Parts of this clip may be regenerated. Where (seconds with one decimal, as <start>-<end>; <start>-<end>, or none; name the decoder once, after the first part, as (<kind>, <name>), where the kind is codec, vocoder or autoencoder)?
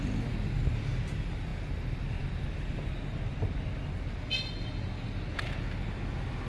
none